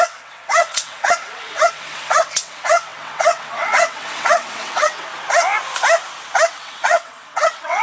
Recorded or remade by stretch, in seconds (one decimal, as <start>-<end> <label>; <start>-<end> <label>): 0.0-5.1 remade; 5.1-6.5 recorded; 6.5-7.8 remade